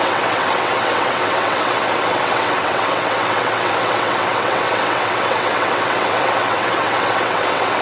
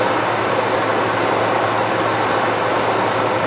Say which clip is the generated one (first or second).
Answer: first